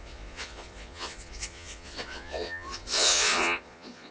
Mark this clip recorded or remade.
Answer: remade